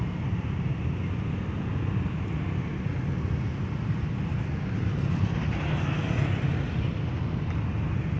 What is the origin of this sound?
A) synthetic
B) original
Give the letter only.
B